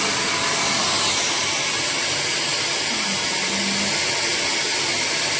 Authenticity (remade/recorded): recorded